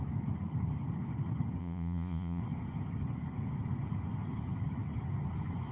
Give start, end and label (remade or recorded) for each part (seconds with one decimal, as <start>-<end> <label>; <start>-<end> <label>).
0.0-1.6 recorded; 1.6-2.4 remade; 2.4-5.7 recorded